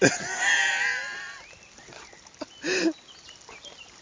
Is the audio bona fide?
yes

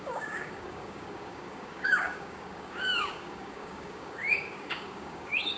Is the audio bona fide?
no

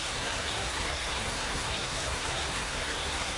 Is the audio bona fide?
no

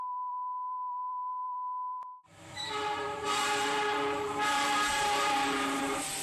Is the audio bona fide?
no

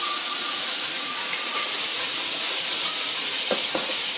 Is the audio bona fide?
no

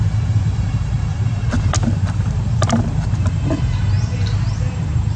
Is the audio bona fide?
no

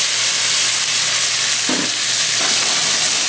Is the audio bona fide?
yes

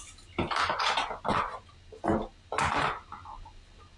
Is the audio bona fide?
yes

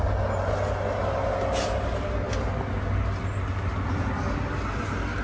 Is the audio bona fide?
yes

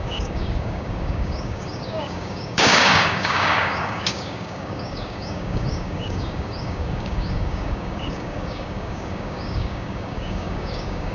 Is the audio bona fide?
no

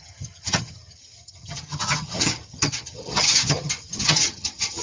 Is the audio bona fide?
no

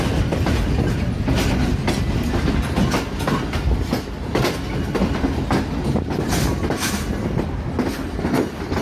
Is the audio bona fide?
yes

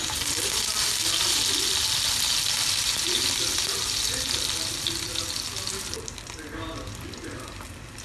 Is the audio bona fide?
yes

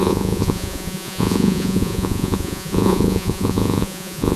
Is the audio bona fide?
no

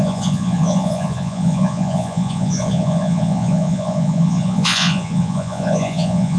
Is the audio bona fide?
no